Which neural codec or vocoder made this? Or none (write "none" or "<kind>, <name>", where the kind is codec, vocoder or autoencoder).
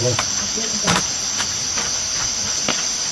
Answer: none